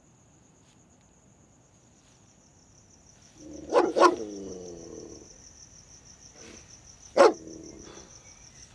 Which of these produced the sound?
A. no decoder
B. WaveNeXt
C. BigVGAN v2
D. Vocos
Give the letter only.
A